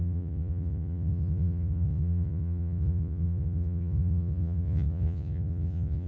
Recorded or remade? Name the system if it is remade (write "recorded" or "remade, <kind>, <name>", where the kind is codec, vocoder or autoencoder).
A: remade, vocoder, Vocos